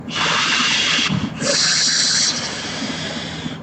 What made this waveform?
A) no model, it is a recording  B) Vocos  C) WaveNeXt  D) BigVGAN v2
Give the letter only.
A